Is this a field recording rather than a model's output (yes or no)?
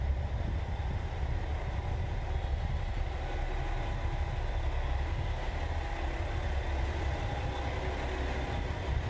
yes